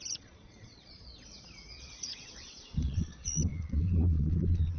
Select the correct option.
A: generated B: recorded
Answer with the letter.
A